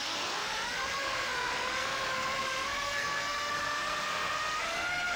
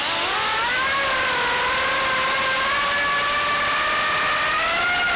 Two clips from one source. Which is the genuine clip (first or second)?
second